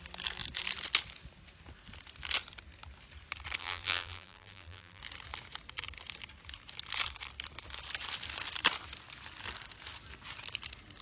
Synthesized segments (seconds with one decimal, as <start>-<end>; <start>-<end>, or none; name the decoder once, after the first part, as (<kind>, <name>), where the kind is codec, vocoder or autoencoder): 3.6-5.0 (vocoder, BigVGAN v2)